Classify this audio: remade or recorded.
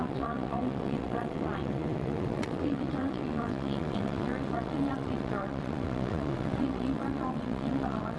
remade